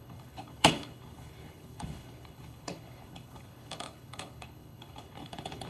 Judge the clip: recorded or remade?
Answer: remade